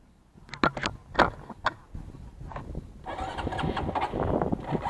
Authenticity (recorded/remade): recorded